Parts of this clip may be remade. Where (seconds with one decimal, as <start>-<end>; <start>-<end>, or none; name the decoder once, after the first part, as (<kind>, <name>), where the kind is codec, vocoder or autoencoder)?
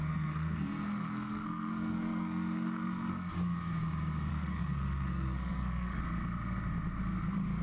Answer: 0.0-3.3 (codec, SNAC); 4.3-6.0